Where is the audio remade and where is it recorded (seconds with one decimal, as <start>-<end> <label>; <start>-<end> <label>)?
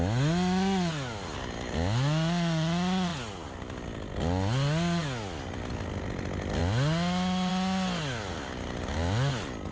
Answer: 0.0-9.7 recorded